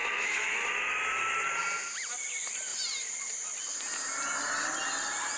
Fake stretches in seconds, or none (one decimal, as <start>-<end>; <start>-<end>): 0.0-0.7